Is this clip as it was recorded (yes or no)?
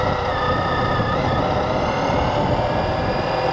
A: yes